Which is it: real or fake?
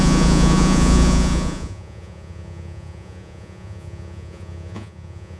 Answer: fake